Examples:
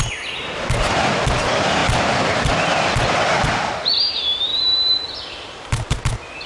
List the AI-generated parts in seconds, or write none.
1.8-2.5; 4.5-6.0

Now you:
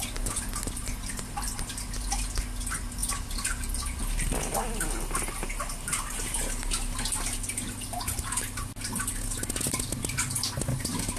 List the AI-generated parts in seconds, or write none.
none

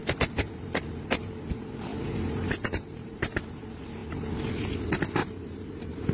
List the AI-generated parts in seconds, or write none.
1.9-3.5; 5.2-6.1